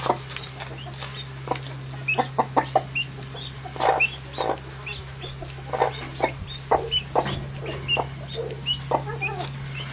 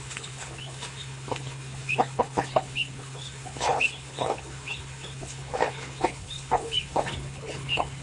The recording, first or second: first